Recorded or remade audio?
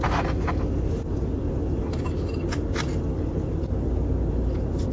recorded